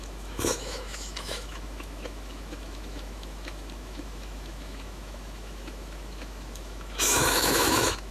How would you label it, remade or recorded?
remade